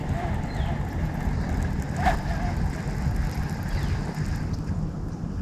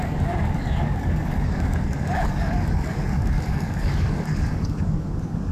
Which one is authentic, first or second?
first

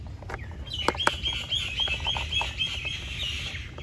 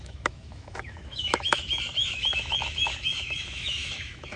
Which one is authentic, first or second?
first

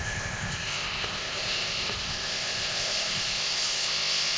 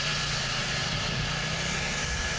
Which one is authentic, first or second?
second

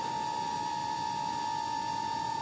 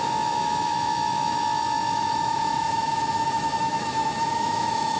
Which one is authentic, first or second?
first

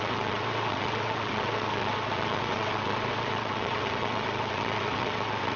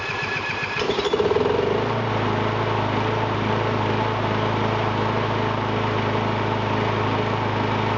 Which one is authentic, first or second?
second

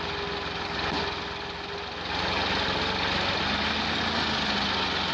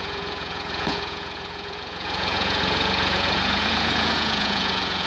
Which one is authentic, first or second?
first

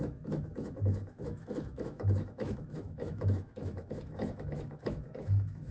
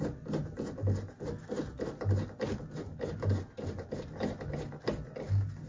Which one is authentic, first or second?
second